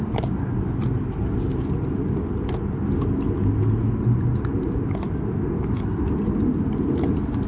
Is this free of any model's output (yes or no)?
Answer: yes